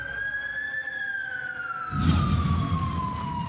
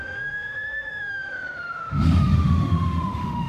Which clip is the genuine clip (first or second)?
first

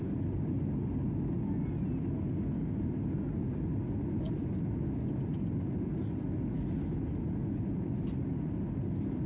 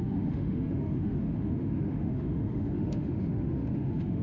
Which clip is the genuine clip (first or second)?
first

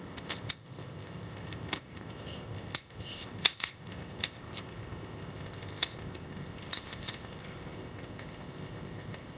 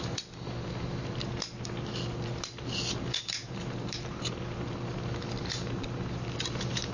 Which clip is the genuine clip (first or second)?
second